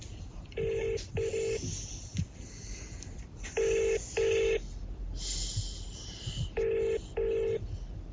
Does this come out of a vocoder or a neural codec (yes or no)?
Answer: no